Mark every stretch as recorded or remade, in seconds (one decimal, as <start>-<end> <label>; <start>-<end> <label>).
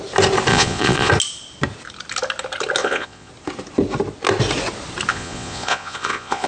0.0-0.5 recorded; 0.5-1.1 remade; 1.1-2.8 recorded; 2.8-3.3 remade; 3.3-5.1 recorded; 5.1-6.5 remade